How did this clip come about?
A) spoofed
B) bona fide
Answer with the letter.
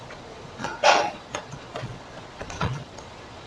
A